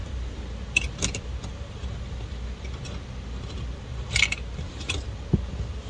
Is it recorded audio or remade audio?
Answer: remade